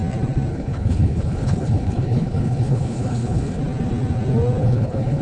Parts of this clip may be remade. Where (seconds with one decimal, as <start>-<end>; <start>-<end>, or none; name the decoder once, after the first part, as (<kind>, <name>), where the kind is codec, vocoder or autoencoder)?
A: 0.5-3.6 (codec, HILCodec); 4.6-5.2